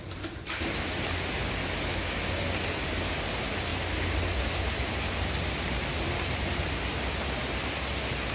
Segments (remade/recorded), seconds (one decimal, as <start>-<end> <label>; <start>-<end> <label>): 0.0-8.3 recorded